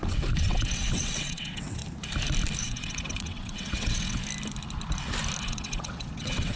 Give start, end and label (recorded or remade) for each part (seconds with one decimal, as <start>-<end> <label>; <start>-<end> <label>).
0.0-1.8 remade; 1.8-2.6 recorded; 2.6-4.2 remade; 4.2-5.4 recorded; 5.4-6.6 remade